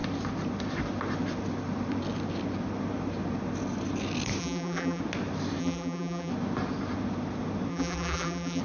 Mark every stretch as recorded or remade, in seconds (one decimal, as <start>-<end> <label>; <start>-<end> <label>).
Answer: 0.0-4.4 recorded; 4.4-5.0 remade; 5.0-5.6 recorded; 5.6-6.3 remade; 6.3-7.7 recorded; 7.7-8.6 remade